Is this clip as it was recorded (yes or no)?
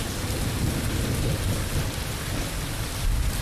yes